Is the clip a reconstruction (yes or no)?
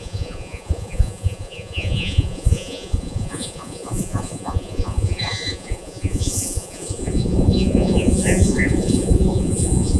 yes